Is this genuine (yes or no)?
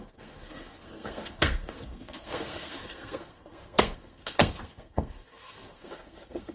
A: no